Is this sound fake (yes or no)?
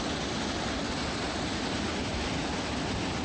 no